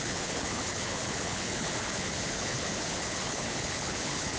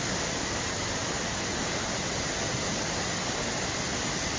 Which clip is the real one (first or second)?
second